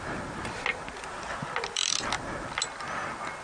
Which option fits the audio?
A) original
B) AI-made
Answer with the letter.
A